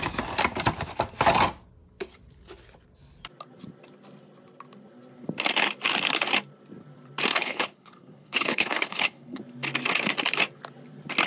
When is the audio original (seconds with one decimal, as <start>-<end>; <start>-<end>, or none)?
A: 0.0-7.3; 9.4-11.3